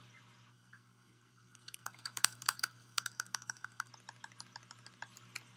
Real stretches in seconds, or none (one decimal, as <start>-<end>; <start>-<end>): 0.0-0.5; 3.9-5.6